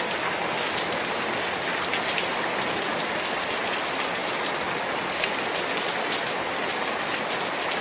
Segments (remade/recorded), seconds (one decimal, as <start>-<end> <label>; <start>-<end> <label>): 0.0-7.8 recorded